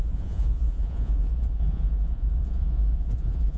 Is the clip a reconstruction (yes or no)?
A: yes